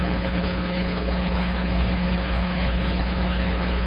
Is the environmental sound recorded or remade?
remade